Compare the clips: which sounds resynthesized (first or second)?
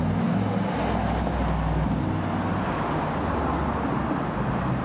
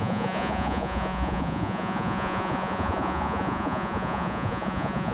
second